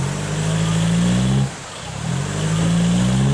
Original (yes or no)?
yes